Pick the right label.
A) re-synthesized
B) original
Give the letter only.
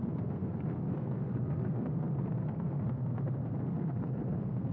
A